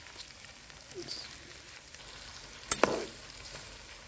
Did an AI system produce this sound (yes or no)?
no